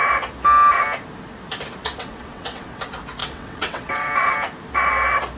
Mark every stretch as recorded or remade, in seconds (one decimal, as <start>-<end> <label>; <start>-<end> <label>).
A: 0.0-1.8 recorded; 1.8-2.8 remade; 2.8-3.2 recorded; 3.2-4.1 remade; 4.1-5.4 recorded